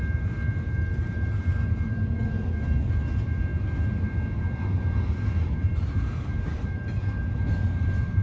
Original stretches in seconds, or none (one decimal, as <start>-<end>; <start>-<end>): 0.0-8.2